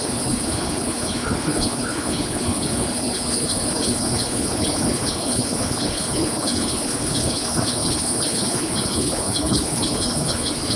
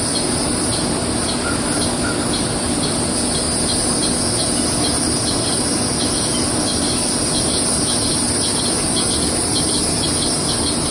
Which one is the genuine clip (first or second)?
second